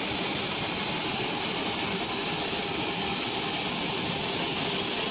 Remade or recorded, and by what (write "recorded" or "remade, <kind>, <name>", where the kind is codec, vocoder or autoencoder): remade, vocoder, BigVGAN v2